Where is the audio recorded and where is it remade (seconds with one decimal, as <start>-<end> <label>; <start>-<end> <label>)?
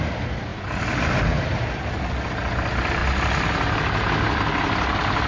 0.0-5.3 recorded